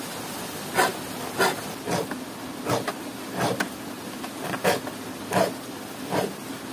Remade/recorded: recorded